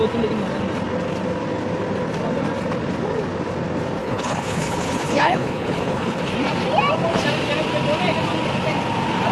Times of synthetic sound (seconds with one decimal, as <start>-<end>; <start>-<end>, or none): 4.0-6.3